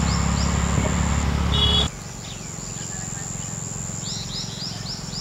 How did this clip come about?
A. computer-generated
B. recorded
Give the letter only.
B